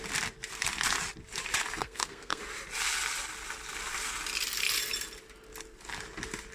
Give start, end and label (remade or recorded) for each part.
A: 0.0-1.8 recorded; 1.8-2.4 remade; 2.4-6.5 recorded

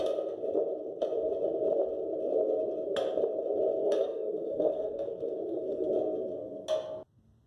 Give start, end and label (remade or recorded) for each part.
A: 0.0-3.8 recorded; 3.8-5.9 remade; 5.9-7.5 recorded

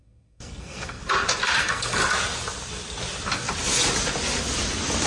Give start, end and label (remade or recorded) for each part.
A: 0.0-1.0 remade; 1.0-1.6 recorded; 1.6-2.0 remade; 2.0-5.1 recorded

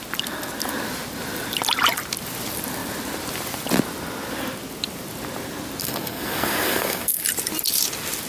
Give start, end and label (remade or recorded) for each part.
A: 0.0-5.8 recorded; 5.8-7.2 remade; 7.2-8.3 recorded

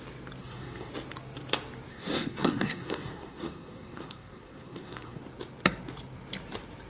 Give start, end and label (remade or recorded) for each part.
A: 0.0-0.4 recorded; 0.4-0.9 remade; 0.9-1.9 recorded; 1.9-5.2 remade; 5.2-6.9 recorded

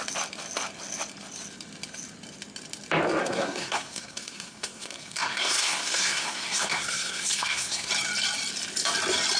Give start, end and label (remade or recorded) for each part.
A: 0.0-3.2 recorded; 3.2-7.9 remade; 7.9-9.4 recorded

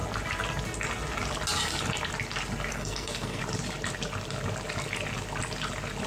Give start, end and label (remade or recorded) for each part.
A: 0.0-2.7 recorded; 2.7-3.4 remade; 3.4-6.1 recorded